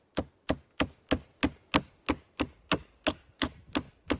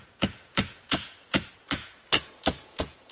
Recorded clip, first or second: first